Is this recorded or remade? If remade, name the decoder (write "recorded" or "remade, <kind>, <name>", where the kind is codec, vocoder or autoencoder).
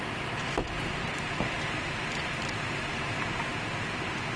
remade, vocoder, BigVGAN v2